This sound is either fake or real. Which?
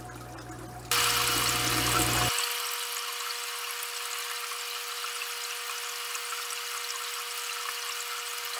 real